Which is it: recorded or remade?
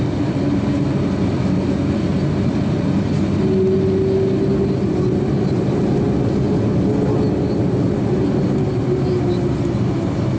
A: recorded